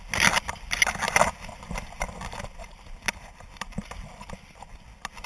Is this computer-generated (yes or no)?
no